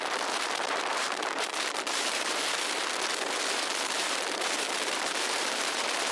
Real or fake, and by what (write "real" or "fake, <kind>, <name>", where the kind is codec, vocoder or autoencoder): fake, vocoder, BigVGAN v2